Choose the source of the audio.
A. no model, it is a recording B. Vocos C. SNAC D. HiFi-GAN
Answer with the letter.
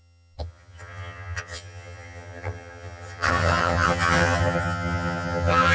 D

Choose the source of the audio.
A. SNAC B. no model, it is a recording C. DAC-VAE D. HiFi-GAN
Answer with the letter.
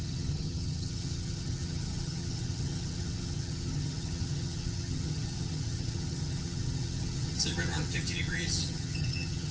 D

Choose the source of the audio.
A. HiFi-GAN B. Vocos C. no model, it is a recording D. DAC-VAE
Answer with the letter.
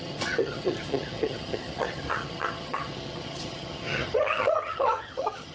A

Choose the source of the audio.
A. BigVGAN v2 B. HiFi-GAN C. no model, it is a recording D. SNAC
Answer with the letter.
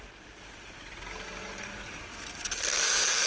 C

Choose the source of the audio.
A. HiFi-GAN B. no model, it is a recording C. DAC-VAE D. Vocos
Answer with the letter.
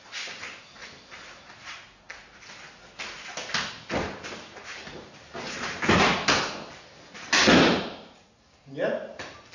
B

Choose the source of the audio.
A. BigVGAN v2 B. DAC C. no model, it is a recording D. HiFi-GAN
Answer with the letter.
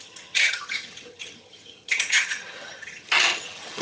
D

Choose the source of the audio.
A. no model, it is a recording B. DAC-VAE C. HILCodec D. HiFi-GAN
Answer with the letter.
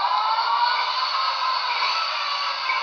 A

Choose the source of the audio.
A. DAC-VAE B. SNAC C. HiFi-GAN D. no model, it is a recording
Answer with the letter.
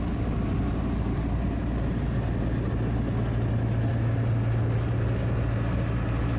D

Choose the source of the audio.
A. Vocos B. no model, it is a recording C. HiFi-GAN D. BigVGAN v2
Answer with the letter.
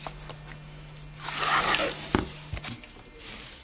B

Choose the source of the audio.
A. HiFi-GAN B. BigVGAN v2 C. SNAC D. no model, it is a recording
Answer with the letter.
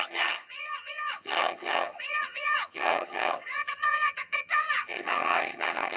A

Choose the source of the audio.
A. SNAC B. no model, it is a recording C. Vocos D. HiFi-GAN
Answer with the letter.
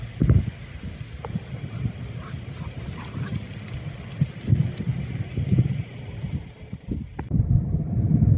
B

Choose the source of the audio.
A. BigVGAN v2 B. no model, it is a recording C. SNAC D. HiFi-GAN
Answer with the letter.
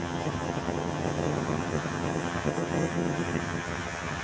D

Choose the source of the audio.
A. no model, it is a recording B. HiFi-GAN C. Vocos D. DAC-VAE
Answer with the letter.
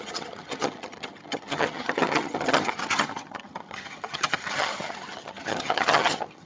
B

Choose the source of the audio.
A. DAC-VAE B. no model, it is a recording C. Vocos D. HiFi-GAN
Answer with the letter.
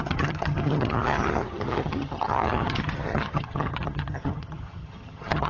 D